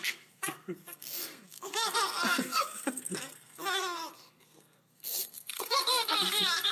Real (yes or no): no